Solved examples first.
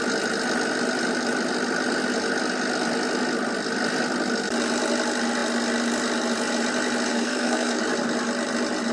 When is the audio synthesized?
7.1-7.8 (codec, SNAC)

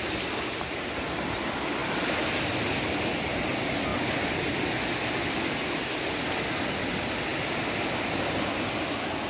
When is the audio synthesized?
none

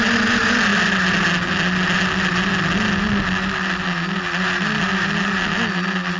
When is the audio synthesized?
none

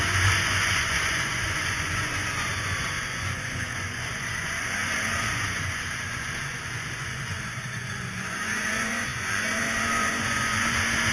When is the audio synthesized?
0.0-11.1 (vocoder, Vocos)

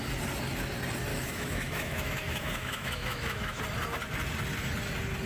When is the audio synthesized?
1.1-3.6 (autoencoder, DAC-VAE)